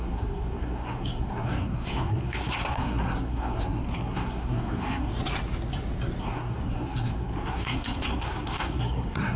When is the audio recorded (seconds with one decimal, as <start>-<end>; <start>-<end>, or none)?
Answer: 5.1-6.2